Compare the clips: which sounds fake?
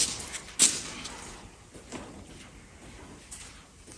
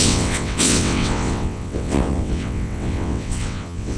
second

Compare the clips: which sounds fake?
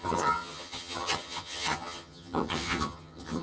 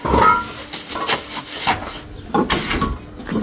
first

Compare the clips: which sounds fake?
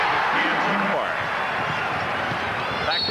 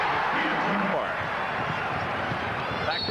second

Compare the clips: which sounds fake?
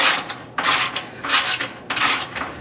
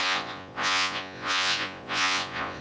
second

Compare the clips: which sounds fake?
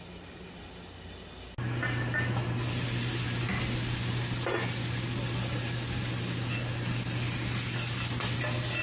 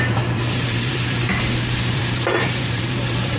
second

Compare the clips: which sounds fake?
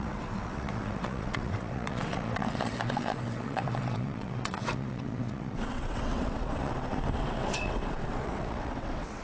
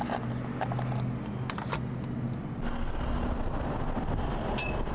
first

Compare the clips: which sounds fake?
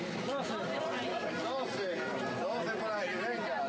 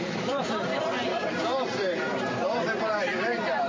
second